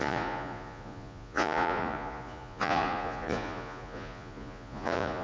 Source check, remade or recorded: remade